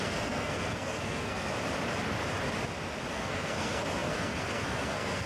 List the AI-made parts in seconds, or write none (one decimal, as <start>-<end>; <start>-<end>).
0.0-1.5; 3.1-5.3